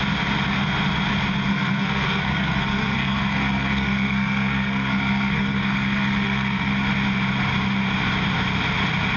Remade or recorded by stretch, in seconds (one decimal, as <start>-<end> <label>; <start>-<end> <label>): 0.0-1.5 recorded; 1.5-6.7 remade; 6.7-9.2 recorded